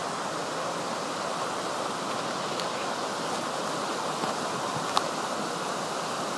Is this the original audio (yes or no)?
yes